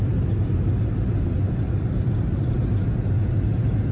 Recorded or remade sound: remade